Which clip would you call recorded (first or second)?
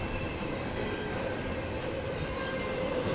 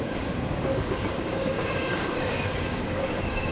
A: first